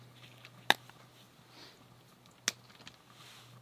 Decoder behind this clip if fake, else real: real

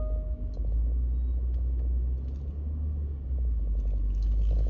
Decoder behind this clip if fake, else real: real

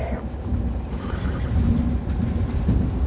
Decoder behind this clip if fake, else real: real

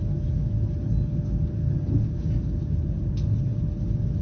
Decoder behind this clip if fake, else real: real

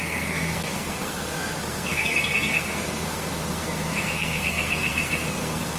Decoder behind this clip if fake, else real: fake, codec, SNAC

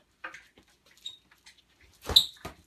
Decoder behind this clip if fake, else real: real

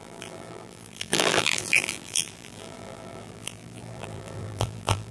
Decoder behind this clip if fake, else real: fake, vocoder, BigVGAN v2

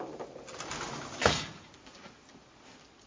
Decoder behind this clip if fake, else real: real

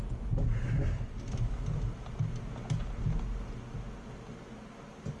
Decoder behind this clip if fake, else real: real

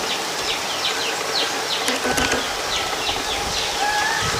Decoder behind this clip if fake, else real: real